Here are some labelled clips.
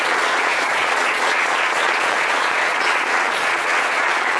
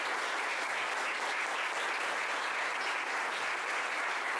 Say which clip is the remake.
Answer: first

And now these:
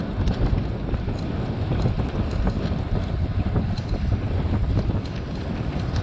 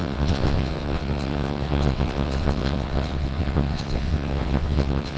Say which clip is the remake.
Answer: second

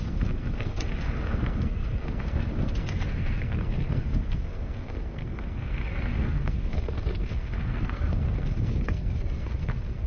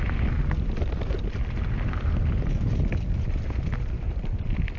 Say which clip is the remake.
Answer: first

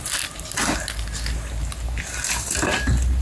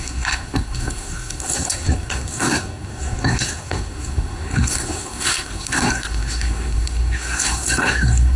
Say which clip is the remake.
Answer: second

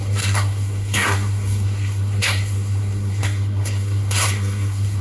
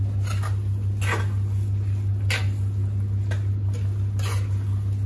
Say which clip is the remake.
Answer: first